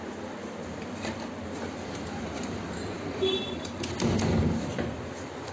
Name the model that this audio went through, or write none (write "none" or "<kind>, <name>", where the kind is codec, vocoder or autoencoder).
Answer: vocoder, BigVGAN v2